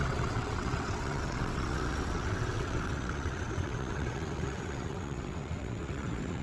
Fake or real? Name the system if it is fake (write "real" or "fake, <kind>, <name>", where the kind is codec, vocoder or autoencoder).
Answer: fake, vocoder, WaveNeXt